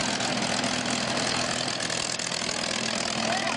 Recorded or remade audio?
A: recorded